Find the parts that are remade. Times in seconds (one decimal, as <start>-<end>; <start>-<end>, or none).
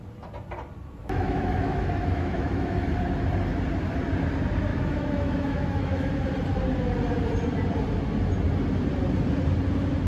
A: 1.0-2.9; 4.7-6.1